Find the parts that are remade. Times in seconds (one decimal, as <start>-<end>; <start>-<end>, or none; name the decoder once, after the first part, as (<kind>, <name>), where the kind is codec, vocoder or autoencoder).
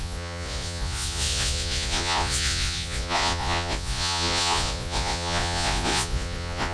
0.0-6.7 (vocoder, Vocos)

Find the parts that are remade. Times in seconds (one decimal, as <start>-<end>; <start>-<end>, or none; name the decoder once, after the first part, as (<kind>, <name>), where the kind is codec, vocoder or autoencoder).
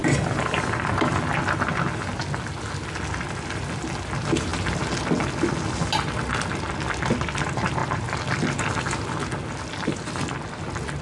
none